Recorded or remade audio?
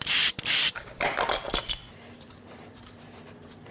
remade